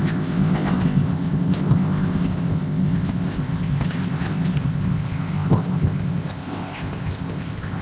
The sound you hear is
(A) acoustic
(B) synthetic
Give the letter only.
B